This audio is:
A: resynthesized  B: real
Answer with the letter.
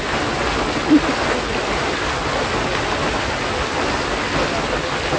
B